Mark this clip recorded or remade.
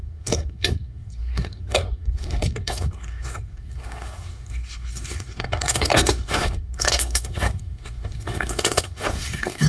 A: remade